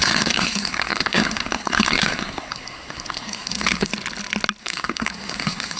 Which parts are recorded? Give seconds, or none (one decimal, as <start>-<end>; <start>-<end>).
3.9-4.6